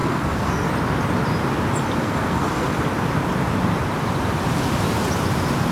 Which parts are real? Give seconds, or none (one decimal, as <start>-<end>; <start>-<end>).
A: 0.7-2.0; 2.8-5.7